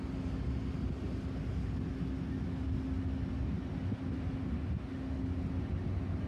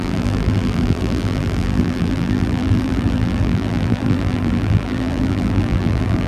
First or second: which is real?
first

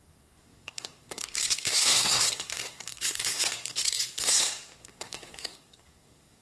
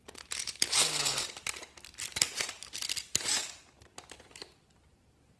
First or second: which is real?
second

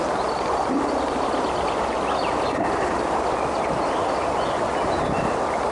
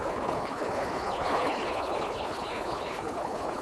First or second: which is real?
first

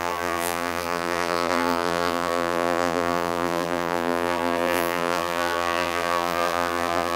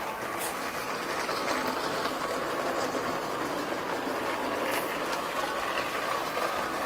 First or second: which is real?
second